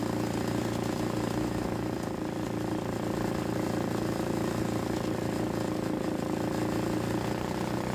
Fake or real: real